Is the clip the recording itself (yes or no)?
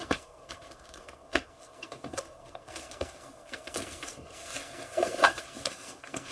no